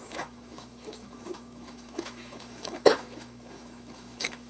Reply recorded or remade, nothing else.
remade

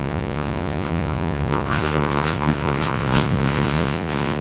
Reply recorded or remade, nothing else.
remade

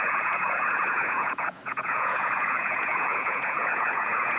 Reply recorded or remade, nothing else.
remade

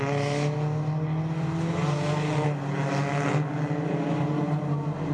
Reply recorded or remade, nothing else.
recorded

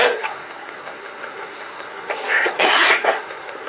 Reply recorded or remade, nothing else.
remade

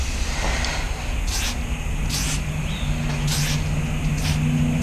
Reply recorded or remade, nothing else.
recorded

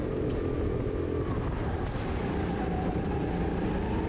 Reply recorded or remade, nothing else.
recorded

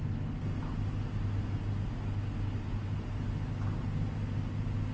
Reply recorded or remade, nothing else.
recorded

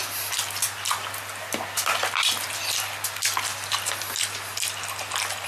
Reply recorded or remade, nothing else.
recorded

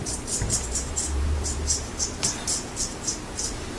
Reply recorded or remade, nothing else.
remade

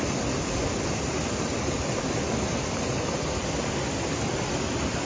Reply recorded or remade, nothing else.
recorded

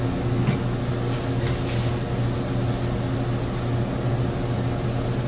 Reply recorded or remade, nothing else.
recorded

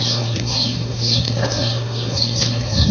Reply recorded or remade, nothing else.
remade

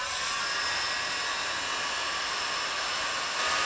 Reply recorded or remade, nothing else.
recorded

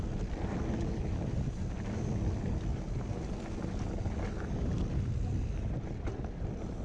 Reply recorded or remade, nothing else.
recorded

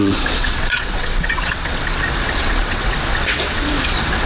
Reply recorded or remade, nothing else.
remade